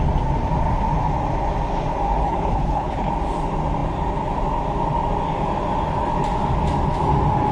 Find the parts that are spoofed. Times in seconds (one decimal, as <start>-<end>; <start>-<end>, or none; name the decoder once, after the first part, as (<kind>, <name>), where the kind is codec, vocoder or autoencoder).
2.2-3.1 (codec, HILCodec)